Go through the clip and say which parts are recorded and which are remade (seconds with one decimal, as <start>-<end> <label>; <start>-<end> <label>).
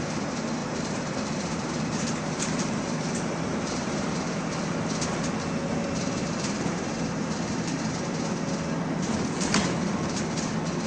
0.0-0.6 recorded; 0.6-4.1 remade; 4.1-5.6 recorded; 5.6-7.7 remade; 7.7-10.9 recorded